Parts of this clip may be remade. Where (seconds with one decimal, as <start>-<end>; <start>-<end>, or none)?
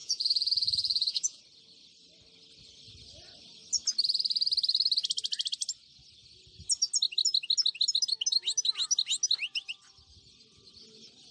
0.0-1.4